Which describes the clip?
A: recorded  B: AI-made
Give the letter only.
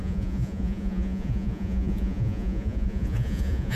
B